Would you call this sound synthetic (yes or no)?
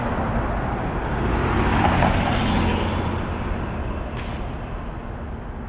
no